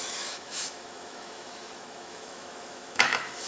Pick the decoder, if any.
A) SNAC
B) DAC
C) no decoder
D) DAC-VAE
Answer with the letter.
D